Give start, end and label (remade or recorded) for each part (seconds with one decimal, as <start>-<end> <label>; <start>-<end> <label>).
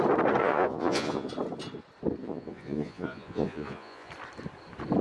0.0-0.4 recorded; 0.4-1.3 remade; 1.3-2.2 recorded; 2.2-4.1 remade; 4.1-5.0 recorded